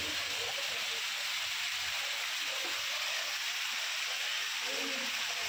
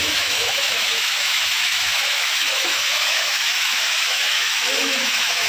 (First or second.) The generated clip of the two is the second